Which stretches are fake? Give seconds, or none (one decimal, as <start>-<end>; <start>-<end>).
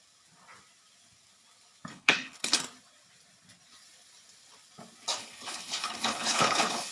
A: 1.9-2.6; 5.2-6.9